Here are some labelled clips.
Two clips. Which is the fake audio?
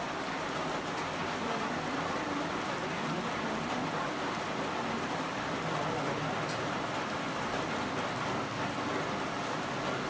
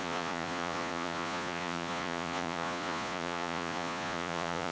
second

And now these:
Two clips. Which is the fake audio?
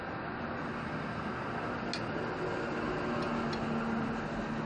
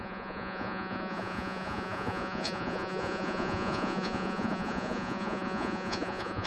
second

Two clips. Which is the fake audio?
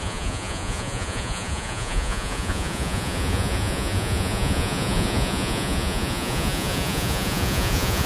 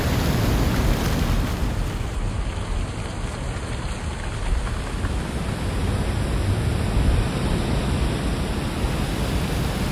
first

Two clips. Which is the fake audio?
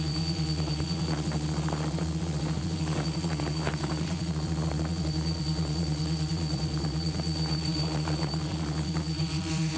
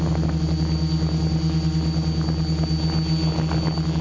first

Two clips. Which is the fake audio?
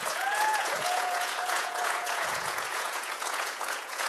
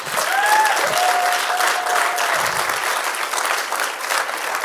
first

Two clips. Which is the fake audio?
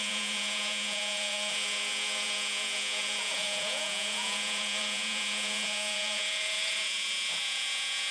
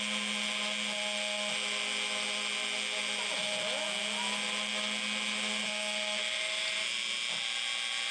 first